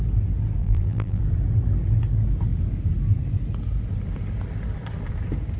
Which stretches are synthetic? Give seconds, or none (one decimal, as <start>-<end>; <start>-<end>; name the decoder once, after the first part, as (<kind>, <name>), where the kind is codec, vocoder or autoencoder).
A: 0.6-1.2 (vocoder, BigVGAN v2)